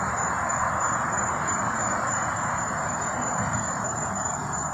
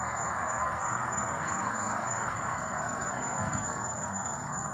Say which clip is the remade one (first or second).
second